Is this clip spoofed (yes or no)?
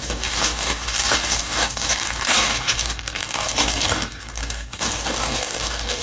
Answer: yes